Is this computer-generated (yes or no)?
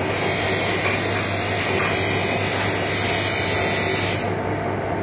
no